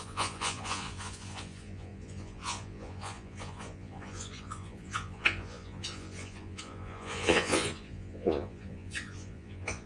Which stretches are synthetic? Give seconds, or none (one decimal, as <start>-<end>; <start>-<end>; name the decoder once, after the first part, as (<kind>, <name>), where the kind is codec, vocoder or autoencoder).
0.0-9.9 (vocoder, Vocos)

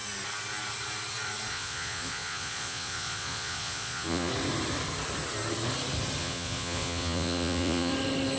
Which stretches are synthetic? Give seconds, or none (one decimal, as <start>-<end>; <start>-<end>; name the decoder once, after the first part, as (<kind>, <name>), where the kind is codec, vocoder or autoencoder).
1.5-4.3 (vocoder, Vocos); 6.2-7.9

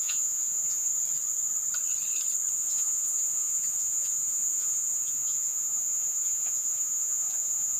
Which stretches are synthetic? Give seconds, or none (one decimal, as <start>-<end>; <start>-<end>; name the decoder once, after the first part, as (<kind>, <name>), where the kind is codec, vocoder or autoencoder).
0.0-0.9 (vocoder, Vocos); 2.5-7.8

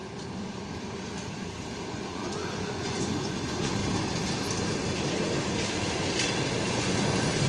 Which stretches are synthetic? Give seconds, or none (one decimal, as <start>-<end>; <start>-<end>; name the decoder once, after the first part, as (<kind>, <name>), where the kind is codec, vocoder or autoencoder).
1.9-3.8 (vocoder, Vocos); 6.7-7.5

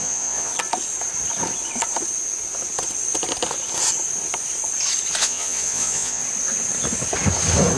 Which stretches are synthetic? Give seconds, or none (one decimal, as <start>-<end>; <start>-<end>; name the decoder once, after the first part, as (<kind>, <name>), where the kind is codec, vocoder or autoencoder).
0.0-0.5 (vocoder, Vocos); 5.2-6.2

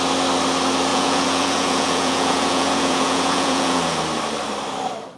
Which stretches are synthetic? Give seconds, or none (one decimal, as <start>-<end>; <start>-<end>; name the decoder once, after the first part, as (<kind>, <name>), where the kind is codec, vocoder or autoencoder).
0.9-4.0 (vocoder, Vocos)

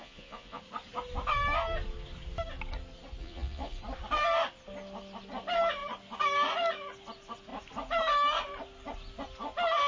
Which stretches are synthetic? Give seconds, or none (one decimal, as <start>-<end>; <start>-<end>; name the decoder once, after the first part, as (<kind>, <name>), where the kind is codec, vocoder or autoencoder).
0.0-0.6 (vocoder, Vocos); 3.2-3.8